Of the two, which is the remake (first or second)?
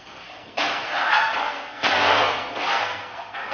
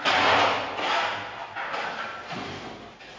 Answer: first